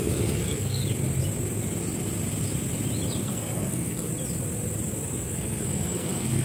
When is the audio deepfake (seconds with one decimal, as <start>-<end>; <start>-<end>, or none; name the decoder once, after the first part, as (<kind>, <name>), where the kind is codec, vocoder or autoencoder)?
0.0-0.8 (codec, SNAC); 3.2-4.1; 5.1-6.4